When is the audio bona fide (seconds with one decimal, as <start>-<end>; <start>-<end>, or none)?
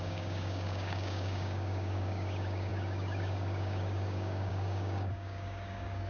none